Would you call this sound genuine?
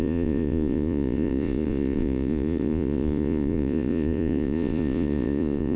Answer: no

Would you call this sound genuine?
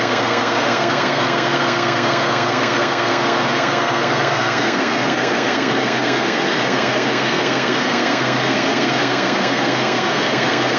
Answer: no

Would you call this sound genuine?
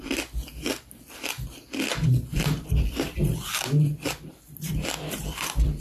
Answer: yes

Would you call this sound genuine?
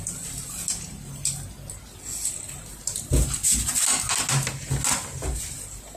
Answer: yes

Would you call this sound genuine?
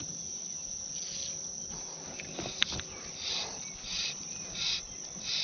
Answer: yes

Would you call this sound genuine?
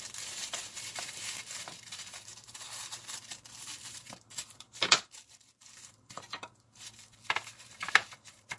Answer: no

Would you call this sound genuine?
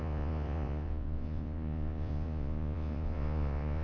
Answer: no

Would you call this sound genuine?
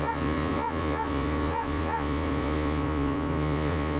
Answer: no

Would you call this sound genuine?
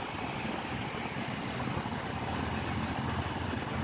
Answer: yes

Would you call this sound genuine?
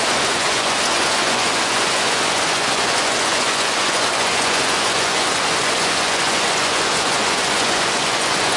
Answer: no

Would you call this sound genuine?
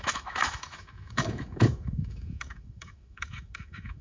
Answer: no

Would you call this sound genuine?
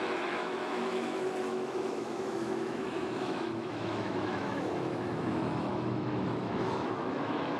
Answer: no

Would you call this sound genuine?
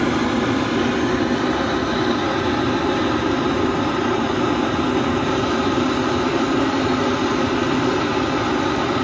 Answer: yes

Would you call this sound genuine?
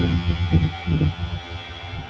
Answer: no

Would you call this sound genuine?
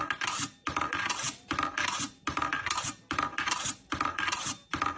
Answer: yes